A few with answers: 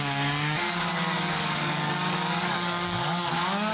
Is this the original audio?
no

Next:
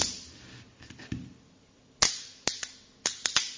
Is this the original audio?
yes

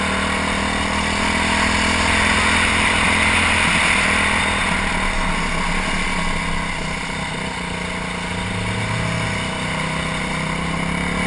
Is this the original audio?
yes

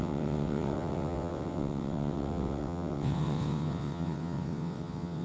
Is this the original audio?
no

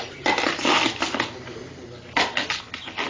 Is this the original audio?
yes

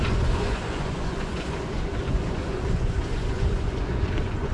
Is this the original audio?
no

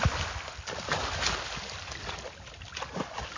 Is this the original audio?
yes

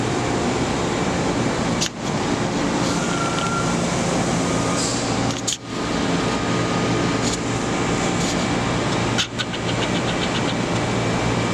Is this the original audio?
yes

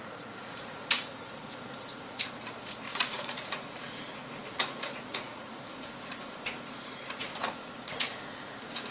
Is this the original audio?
no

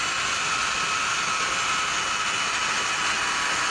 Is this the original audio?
yes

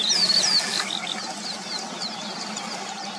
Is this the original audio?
yes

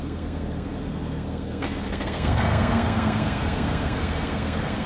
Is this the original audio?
no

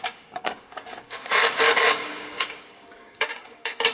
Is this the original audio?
no